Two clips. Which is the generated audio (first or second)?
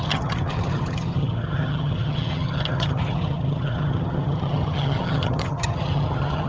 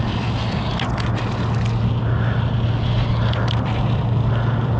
first